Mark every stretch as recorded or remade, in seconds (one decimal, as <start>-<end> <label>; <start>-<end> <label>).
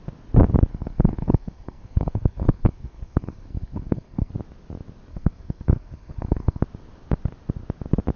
0.0-0.7 recorded; 0.7-4.3 remade; 4.3-5.1 recorded; 5.1-6.6 remade; 6.6-8.2 recorded